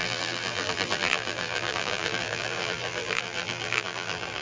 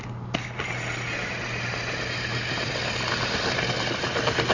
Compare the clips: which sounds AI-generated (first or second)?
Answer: first